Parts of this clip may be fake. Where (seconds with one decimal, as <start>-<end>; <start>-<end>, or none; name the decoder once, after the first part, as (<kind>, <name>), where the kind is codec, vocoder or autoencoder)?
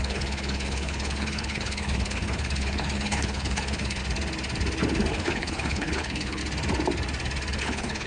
0.0-4.0 (codec, HILCodec); 5.1-6.4; 7.6-8.1